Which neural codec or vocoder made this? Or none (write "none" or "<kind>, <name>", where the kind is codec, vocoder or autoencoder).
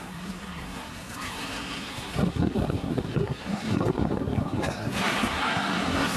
codec, SNAC